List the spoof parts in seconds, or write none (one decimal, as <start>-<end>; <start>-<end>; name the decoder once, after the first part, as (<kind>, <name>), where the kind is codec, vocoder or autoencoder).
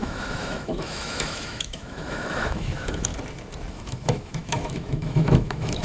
0.0-3.1 (autoencoder, DAC-VAE); 3.7-5.8